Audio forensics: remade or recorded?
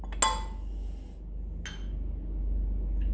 recorded